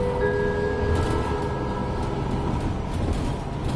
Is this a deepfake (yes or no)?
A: no